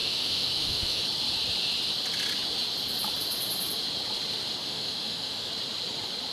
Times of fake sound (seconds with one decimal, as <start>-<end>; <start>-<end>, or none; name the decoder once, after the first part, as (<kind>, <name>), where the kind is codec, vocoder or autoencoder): 0.0-1.0 (autoencoder, DAC-VAE); 4.6-5.5